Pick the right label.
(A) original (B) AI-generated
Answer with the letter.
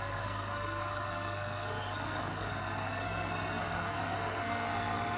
B